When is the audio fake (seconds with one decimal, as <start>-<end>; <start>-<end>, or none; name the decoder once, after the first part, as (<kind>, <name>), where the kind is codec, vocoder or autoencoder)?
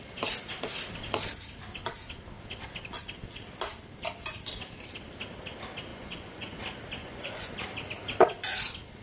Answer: 5.9-6.6 (vocoder, Vocos); 7.0-7.5